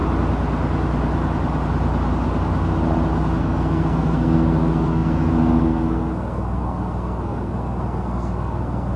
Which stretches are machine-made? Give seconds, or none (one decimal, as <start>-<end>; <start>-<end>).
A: 3.4-9.0